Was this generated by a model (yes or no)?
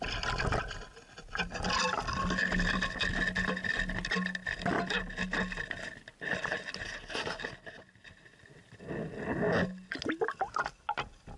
no